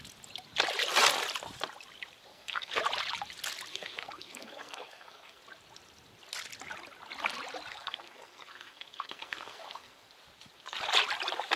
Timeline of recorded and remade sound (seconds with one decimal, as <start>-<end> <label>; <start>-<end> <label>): 0.0-2.3 recorded; 2.3-2.8 remade; 2.8-3.7 recorded; 3.7-5.4 remade; 5.4-7.7 recorded; 7.7-10.1 remade; 10.1-11.6 recorded